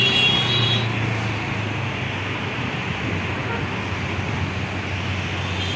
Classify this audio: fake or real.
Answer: real